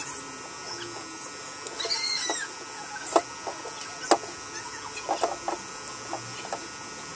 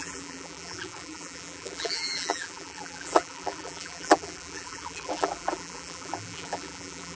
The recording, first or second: first